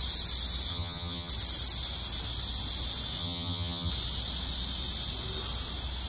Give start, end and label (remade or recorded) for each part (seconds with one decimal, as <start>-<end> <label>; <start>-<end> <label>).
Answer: 0.0-0.7 recorded; 0.7-1.3 remade; 1.3-3.2 recorded; 3.2-3.9 remade; 3.9-6.1 recorded